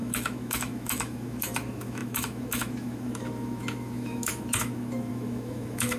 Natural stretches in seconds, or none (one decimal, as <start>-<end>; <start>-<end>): none